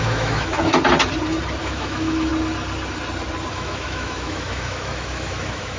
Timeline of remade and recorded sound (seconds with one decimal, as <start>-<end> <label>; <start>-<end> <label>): 0.0-0.7 remade; 0.7-1.6 recorded; 1.6-2.3 remade; 2.3-3.5 recorded; 3.5-5.8 remade